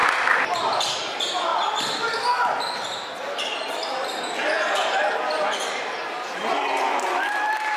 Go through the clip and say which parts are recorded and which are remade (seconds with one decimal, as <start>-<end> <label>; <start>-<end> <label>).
0.0-0.6 recorded; 0.6-1.5 remade; 1.5-3.2 recorded; 3.2-7.8 remade

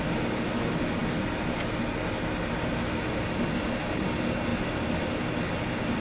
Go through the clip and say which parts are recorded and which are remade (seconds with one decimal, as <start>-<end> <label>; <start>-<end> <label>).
0.0-6.0 recorded

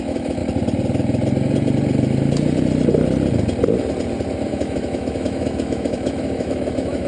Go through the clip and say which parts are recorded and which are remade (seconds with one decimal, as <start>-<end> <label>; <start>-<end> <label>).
0.0-0.4 remade; 0.4-4.5 recorded; 4.5-7.1 remade